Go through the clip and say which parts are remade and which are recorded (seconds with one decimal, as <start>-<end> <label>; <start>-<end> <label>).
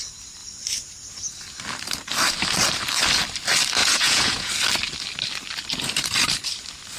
0.0-3.8 recorded; 3.8-4.5 remade; 4.5-7.0 recorded